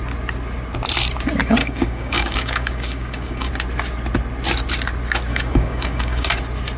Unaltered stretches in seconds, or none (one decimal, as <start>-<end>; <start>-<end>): 0.0-1.6; 3.5-5.3; 6.3-6.8